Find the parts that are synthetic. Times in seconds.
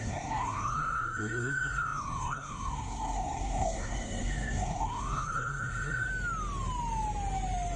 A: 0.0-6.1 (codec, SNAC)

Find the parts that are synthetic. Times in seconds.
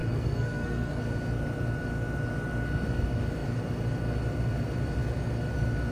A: 0.0-1.0 (codec, SNAC)